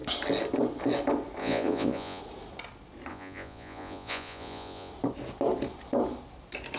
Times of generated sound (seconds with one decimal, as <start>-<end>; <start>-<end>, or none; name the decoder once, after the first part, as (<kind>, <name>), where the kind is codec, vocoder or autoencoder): 1.4-2.2 (vocoder, Vocos); 3.1-4.9